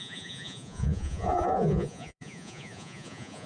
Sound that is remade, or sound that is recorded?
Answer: remade